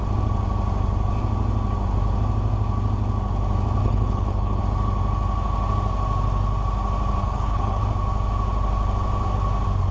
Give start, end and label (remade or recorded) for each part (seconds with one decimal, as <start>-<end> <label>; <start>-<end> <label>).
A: 0.0-3.8 recorded; 3.8-4.6 remade; 4.6-7.2 recorded; 7.2-7.8 remade; 7.8-9.9 recorded